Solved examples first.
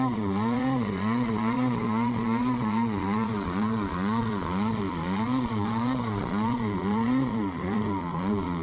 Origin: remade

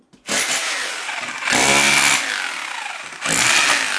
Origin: recorded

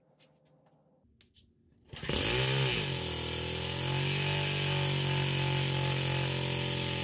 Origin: recorded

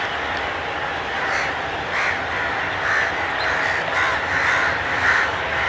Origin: recorded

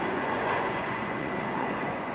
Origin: remade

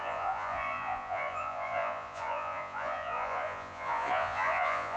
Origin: remade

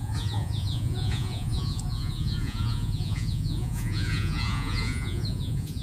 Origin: remade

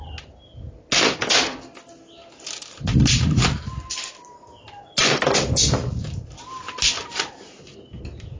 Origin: recorded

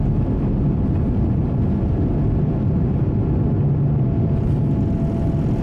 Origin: recorded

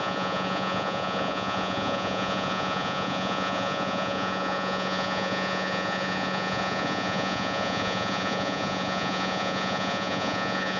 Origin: remade